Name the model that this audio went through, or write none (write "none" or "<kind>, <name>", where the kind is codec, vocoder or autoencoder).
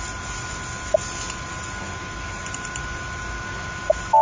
none